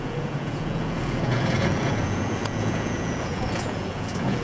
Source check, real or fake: fake